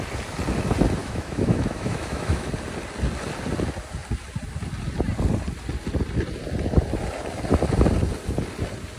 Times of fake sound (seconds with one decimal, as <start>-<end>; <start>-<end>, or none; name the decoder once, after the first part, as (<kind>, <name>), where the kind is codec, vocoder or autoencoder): 1.0-2.5 (autoencoder, DAC-VAE)